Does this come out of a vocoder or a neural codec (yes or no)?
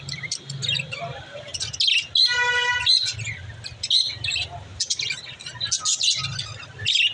no